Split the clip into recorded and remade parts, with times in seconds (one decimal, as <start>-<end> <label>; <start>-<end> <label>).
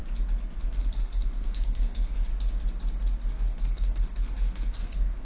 0.0-0.6 recorded; 0.6-2.3 remade; 2.3-3.3 recorded; 3.3-5.2 remade